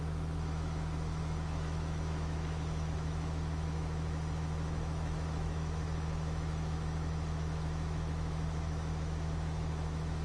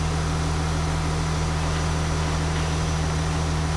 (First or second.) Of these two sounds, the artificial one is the first